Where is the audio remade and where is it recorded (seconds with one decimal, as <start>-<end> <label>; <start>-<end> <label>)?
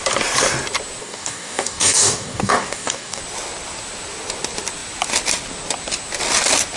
0.0-1.0 recorded; 1.0-3.2 remade; 3.2-6.8 recorded